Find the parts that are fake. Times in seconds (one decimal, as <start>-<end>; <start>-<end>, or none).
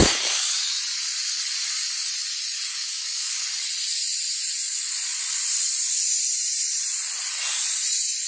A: 0.0-0.6; 2.7-3.4